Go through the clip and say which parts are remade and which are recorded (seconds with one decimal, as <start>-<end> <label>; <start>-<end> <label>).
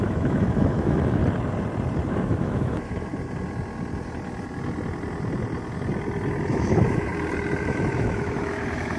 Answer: 0.0-1.2 remade; 1.2-2.1 recorded; 2.1-3.1 remade; 3.1-6.5 recorded; 6.5-7.1 remade; 7.1-7.6 recorded; 7.6-9.0 remade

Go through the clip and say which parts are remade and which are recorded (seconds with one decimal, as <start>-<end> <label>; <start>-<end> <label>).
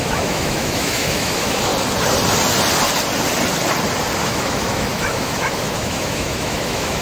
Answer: 0.0-1.7 remade; 1.7-4.2 recorded; 4.2-7.0 remade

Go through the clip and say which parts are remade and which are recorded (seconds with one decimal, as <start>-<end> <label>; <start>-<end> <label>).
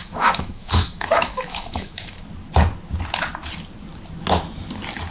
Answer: 0.0-2.2 remade; 2.2-5.1 recorded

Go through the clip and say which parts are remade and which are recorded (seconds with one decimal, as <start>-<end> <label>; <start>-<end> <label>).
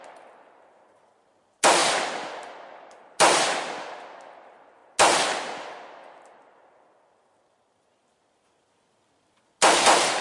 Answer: 0.0-10.2 recorded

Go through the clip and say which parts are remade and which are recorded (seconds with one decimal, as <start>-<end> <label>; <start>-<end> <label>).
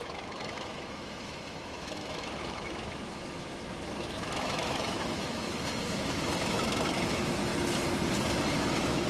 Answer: 0.0-7.5 remade; 7.5-8.4 recorded; 8.4-9.1 remade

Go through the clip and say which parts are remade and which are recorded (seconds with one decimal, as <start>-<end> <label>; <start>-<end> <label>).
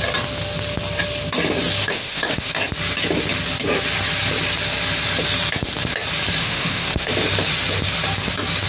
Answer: 0.0-1.8 recorded; 1.8-2.5 remade; 2.5-6.4 recorded; 6.4-7.1 remade; 7.1-8.7 recorded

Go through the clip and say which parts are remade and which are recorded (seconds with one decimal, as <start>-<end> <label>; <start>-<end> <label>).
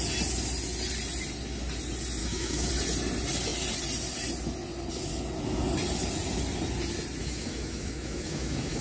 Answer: 0.0-2.2 recorded; 2.2-2.7 remade; 2.7-7.2 recorded; 7.2-8.8 remade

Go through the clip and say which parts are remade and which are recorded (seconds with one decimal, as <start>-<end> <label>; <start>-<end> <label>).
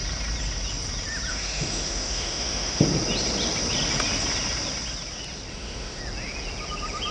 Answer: 0.0-1.3 recorded; 1.3-2.8 remade; 2.8-5.5 recorded; 5.5-6.0 remade; 6.0-7.1 recorded